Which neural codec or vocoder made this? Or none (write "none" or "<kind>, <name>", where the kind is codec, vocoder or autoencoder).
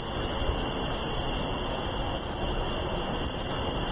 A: none